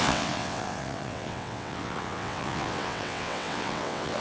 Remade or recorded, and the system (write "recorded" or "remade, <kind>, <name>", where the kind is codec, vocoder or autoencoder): remade, vocoder, WaveNeXt